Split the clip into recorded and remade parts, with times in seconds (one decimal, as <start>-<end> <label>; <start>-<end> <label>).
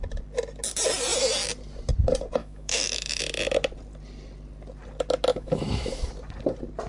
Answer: 0.0-2.4 recorded; 2.4-3.2 remade; 3.2-5.3 recorded; 5.3-6.1 remade; 6.1-6.9 recorded